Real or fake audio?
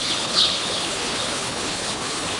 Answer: fake